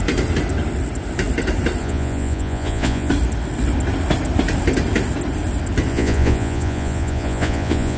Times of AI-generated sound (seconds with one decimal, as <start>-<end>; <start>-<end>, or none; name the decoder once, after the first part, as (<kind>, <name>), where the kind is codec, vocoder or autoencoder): 1.8-3.1 (vocoder, Vocos); 5.9-8.0